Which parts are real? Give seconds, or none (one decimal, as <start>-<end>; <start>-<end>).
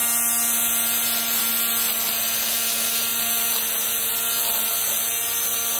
0.0-5.8